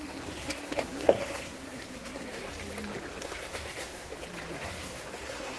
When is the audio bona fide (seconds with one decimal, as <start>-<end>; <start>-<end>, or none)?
2.5-3.2; 4.1-4.6